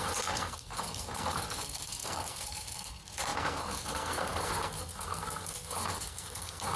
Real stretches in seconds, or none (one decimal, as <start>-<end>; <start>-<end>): none